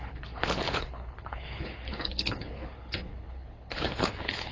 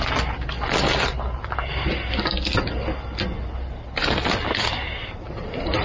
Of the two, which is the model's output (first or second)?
first